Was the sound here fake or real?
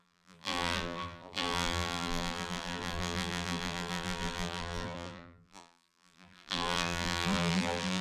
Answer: fake